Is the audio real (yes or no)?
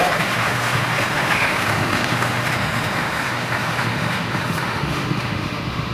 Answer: no